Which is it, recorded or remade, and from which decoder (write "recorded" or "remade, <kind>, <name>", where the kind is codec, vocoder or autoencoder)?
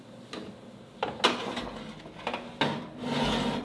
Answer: recorded